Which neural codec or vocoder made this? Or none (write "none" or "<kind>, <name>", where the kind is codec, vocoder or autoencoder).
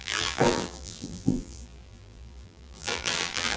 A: vocoder, BigVGAN v2